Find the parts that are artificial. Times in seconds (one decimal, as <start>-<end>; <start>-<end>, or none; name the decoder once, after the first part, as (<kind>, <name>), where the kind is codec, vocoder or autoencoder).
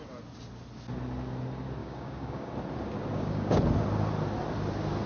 1.8-2.5 (codec, DAC); 3.1-3.6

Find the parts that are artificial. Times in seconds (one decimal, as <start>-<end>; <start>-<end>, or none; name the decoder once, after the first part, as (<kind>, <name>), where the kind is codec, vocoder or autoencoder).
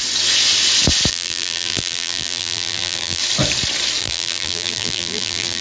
1.1-3.2 (vocoder, BigVGAN v2); 4.0-5.6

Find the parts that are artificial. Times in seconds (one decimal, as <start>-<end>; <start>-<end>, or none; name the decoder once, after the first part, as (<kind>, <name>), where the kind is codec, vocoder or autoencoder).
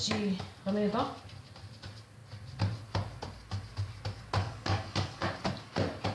4.4-5.2 (codec, DAC)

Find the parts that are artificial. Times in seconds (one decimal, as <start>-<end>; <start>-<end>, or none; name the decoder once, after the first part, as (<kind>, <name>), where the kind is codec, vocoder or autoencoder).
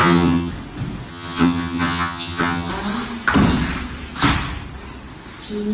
0.0-0.5 (vocoder, HiFi-GAN); 1.1-2.7